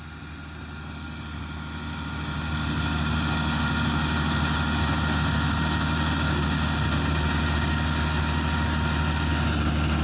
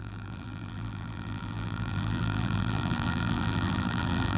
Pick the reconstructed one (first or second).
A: second